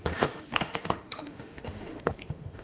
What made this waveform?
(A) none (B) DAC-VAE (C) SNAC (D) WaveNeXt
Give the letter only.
B